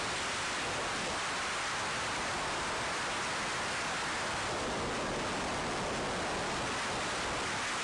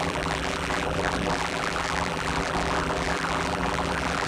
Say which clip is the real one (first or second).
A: first